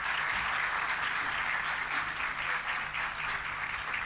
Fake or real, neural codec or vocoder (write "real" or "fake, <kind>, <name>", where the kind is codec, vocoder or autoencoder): real